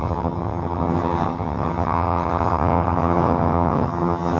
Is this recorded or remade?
remade